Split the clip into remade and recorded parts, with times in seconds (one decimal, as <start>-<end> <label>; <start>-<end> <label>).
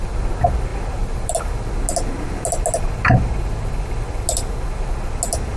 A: 0.0-5.6 recorded